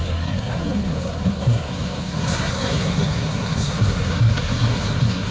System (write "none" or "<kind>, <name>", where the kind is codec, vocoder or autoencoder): codec, SNAC